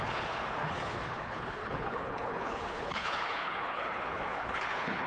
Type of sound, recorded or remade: remade